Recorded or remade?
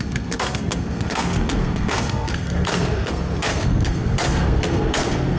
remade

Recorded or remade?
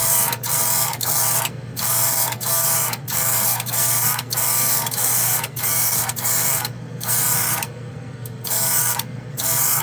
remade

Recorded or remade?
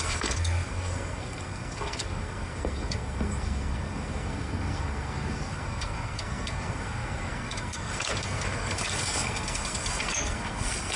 remade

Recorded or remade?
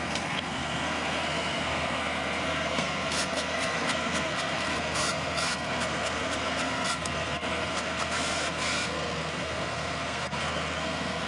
remade